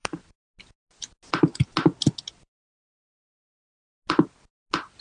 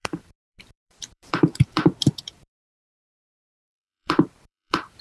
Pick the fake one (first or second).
second